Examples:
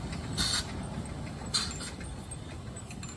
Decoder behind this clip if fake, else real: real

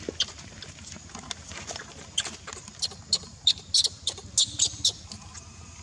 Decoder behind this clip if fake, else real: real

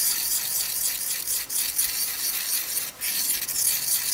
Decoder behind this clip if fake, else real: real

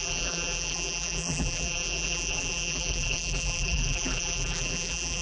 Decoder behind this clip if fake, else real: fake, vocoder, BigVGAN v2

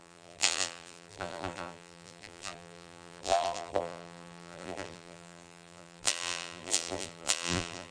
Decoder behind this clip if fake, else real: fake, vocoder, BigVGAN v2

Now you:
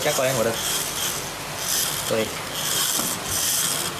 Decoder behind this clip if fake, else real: real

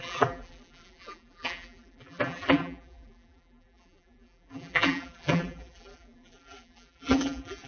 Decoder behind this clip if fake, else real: fake, vocoder, BigVGAN v2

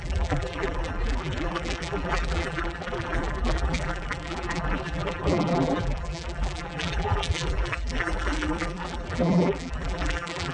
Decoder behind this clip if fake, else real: fake, vocoder, BigVGAN v2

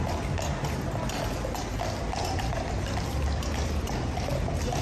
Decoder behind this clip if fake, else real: real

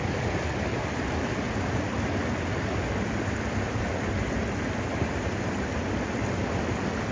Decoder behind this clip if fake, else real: real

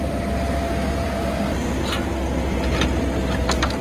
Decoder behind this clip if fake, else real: real